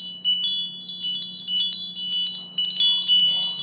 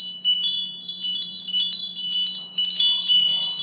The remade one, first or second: second